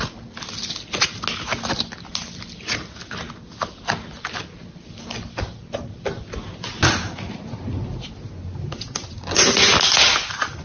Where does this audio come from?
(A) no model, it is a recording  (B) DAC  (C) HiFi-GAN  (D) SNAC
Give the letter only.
A